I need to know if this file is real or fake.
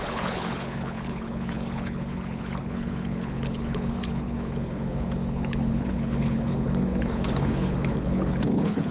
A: fake